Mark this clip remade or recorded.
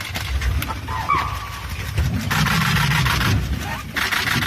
recorded